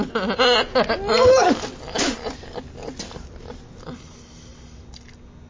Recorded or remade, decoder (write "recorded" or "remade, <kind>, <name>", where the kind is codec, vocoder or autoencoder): recorded